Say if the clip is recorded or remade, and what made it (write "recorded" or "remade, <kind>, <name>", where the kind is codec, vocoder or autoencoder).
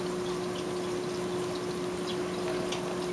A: recorded